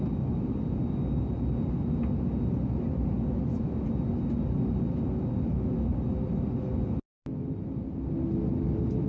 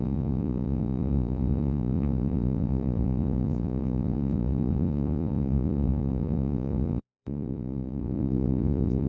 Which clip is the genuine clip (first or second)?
first